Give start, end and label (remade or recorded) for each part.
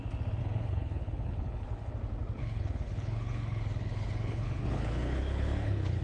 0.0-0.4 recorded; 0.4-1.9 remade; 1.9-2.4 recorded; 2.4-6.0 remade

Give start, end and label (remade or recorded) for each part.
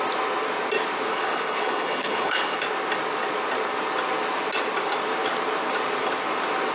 0.0-1.1 recorded; 1.1-2.6 remade; 2.6-6.7 recorded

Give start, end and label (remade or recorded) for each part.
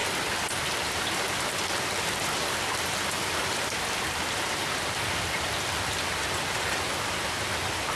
0.0-8.0 recorded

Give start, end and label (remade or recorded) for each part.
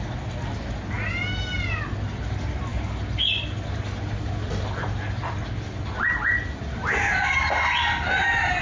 0.0-8.6 recorded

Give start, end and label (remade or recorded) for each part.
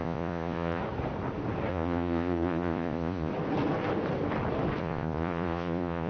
0.0-0.8 remade; 0.8-1.7 recorded; 1.7-3.3 remade; 3.3-4.8 recorded; 4.8-6.1 remade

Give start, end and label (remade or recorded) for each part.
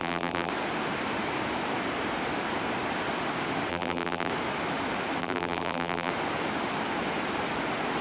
0.0-0.5 remade; 0.5-3.7 recorded; 3.7-4.3 remade; 4.3-5.2 recorded; 5.2-6.1 remade; 6.1-8.0 recorded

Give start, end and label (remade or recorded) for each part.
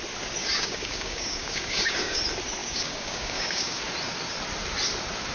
0.0-0.4 recorded; 0.4-2.2 remade; 2.2-2.6 recorded; 2.6-3.8 remade; 3.8-5.3 recorded